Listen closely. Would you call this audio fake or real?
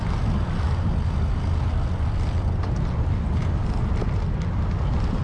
real